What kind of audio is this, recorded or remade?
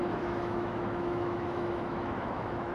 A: remade